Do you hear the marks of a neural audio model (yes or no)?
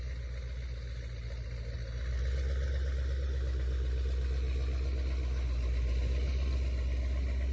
no